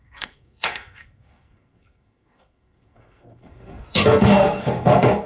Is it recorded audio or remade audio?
remade